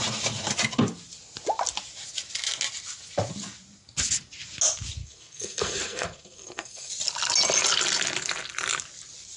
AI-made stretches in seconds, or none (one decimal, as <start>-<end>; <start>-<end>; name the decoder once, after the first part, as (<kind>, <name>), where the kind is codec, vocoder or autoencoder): 5.0-6.9 (codec, SNAC)